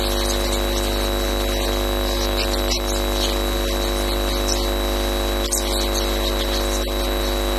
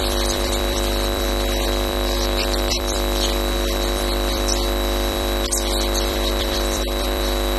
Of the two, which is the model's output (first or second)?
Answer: second